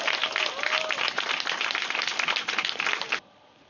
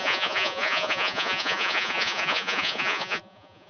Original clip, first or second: first